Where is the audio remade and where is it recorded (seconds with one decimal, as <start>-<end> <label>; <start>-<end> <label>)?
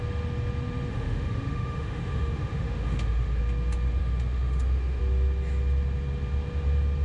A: 0.0-0.9 recorded; 0.9-3.4 remade; 3.4-4.0 recorded; 4.0-5.0 remade; 5.0-7.0 recorded